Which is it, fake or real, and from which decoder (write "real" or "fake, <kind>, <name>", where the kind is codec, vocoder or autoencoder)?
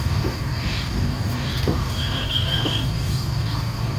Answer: fake, codec, DAC